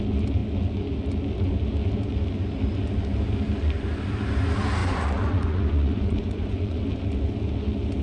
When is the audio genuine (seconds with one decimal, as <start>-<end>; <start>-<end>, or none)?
0.0-4.8; 6.8-8.0